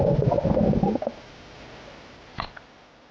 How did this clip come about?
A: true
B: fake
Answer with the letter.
A